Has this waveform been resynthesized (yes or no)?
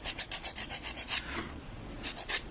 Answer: yes